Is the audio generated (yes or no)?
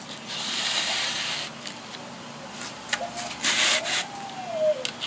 no